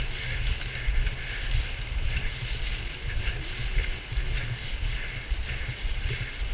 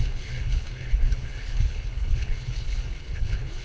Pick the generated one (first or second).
second